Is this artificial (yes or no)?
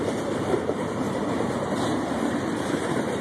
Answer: yes